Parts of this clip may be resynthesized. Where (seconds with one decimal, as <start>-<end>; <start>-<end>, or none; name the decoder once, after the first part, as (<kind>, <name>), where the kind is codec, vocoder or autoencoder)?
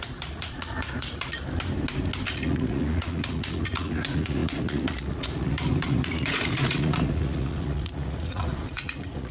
0.0-1.3 (vocoder, Vocos); 2.3-9.3